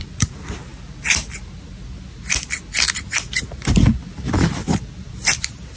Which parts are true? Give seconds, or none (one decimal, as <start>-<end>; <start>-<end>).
0.7-3.4